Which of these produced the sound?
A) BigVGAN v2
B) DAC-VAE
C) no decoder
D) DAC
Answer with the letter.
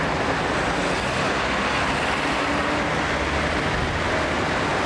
C